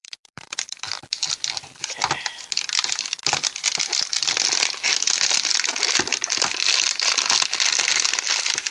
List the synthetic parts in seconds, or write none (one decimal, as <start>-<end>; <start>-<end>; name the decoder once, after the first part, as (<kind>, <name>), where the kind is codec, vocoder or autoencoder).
0.0-1.0 (vocoder, BigVGAN v2)